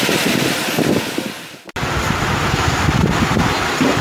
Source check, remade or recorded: recorded